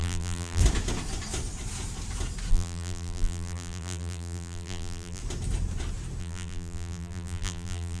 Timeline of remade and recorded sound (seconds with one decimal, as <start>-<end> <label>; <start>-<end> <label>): 0.0-0.6 remade; 0.6-2.5 recorded; 2.5-5.2 remade; 5.2-6.2 recorded; 6.2-8.0 remade

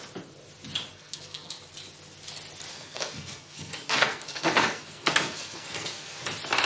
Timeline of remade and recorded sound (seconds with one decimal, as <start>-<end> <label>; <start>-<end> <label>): 0.0-0.9 recorded; 0.9-1.6 remade; 1.6-2.7 recorded; 2.7-6.2 remade; 6.2-6.7 recorded

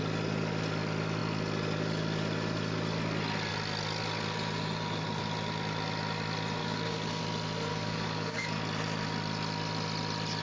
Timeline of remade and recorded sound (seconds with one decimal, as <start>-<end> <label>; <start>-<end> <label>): 0.0-6.6 recorded; 6.6-7.2 remade; 7.2-7.7 recorded; 7.7-8.6 remade; 8.6-10.4 recorded

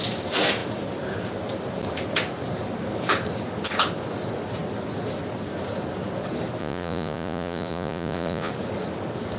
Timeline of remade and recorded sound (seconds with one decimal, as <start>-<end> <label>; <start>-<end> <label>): 0.0-6.6 recorded; 6.6-8.5 remade; 8.5-9.4 recorded

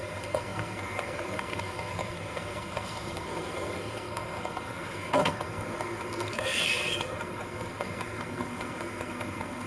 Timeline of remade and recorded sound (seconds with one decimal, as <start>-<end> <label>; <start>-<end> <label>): 0.0-9.7 remade

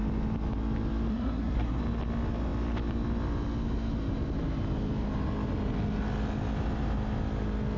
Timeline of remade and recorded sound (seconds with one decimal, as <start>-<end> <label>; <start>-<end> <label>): 0.0-1.1 recorded; 1.1-1.8 remade; 1.8-7.8 recorded

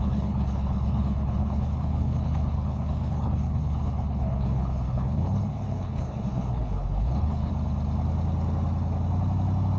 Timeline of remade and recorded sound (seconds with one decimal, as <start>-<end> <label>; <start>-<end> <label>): 0.0-7.5 remade; 7.5-9.8 recorded